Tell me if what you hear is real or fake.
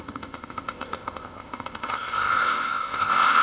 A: fake